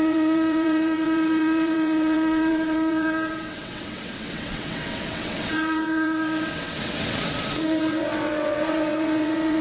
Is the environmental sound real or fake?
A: fake